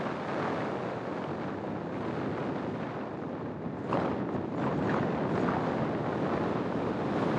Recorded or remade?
recorded